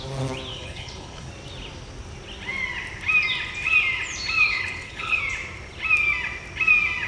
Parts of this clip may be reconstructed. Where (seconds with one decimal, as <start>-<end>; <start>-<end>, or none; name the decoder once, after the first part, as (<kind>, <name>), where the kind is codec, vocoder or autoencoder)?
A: 0.5-1.3 (codec, HILCodec); 4.4-5.2